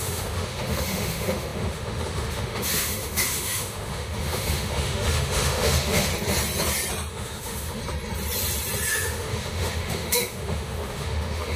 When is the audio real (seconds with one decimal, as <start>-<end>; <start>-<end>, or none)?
6.1-7.1; 7.8-8.9

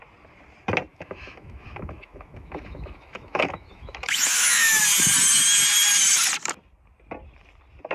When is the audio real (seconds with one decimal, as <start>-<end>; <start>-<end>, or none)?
0.0-0.9; 4.8-7.9

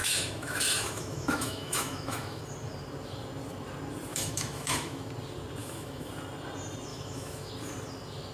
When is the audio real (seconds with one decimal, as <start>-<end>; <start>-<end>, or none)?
2.4-4.1; 5.1-5.6; 6.1-6.9; 7.5-8.3

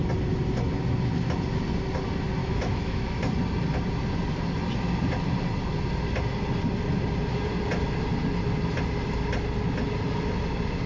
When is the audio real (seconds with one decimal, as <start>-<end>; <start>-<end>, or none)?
0.0-2.4; 3.2-10.9